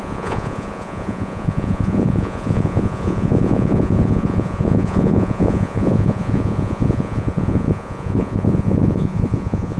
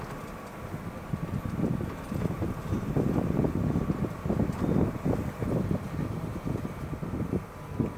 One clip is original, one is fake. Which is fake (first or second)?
first